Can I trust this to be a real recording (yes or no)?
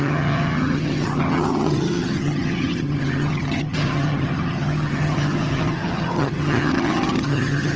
no